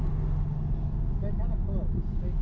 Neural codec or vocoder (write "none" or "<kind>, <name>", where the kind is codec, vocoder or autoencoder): none